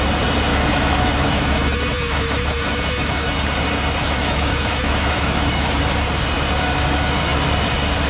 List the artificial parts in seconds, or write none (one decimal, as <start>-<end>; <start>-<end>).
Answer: 0.5-3.3; 4.0-5.8